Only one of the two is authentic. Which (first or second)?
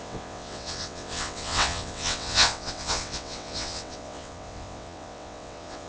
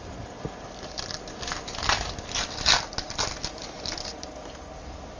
second